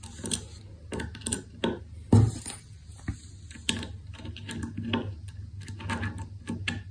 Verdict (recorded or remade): recorded